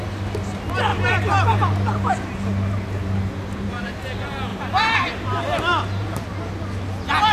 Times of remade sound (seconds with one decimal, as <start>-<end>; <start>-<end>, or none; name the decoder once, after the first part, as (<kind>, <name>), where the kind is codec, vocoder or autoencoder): 0.9-3.7 (vocoder, BigVGAN v2); 4.5-6.6